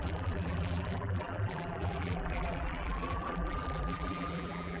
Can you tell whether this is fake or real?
fake